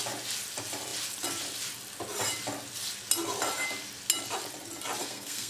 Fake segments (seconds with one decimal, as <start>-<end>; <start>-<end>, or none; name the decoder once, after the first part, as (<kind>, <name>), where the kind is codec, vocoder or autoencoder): 5.0-5.5 (codec, SNAC)